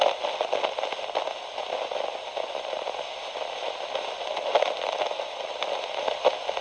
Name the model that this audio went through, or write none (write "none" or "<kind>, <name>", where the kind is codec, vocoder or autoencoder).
none